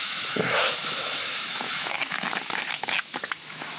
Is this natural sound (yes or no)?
no